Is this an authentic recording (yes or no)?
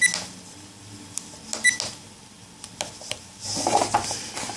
yes